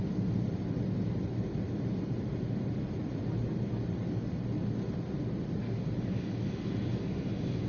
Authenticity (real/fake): real